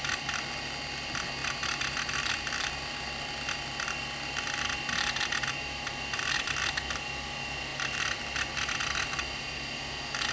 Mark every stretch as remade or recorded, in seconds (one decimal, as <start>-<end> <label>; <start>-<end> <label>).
0.0-10.3 recorded